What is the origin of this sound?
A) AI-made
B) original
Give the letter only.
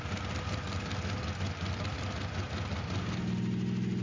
A